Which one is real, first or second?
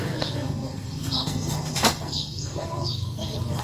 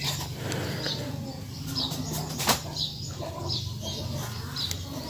second